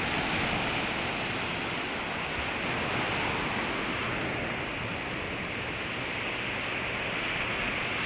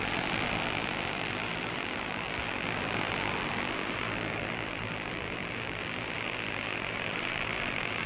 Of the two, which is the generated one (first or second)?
second